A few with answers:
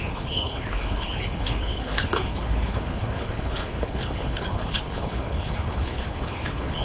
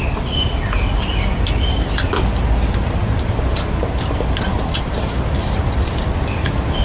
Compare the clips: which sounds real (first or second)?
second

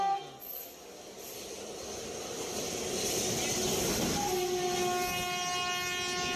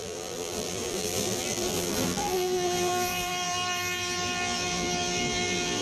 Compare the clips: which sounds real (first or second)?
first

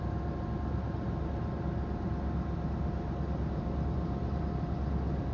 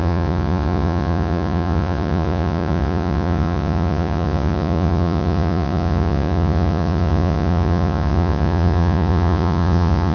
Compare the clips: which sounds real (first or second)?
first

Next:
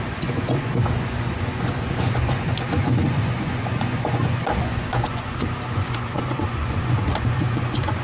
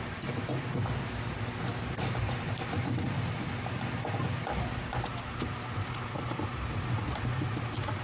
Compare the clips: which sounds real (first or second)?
second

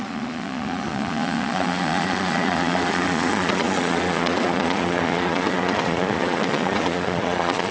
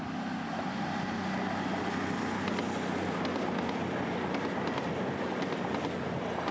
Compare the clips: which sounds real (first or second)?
second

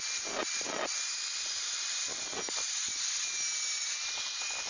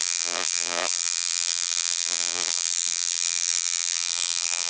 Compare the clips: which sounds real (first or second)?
first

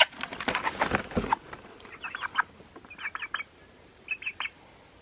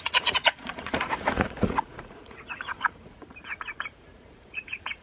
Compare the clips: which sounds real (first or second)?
first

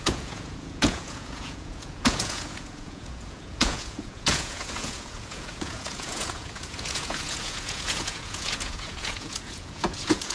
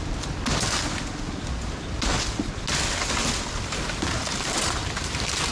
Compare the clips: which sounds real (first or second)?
second